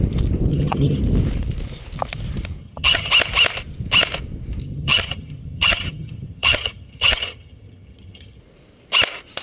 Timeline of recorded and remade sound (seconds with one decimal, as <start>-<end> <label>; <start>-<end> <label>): 0.0-0.5 recorded; 0.5-1.0 remade; 1.0-2.6 recorded; 2.6-3.1 remade; 3.1-4.6 recorded; 4.6-8.4 remade; 8.4-9.4 recorded